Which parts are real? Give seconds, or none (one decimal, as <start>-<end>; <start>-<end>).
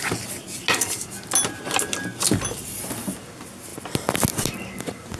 0.0-5.2